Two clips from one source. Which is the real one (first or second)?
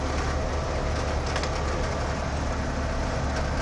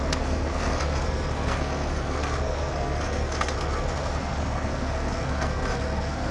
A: first